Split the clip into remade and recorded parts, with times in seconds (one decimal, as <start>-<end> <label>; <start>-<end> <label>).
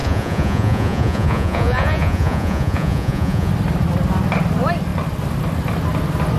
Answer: 0.0-3.5 remade; 3.5-6.4 recorded